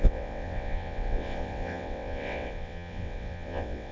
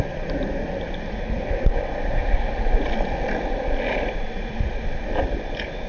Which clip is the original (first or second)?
second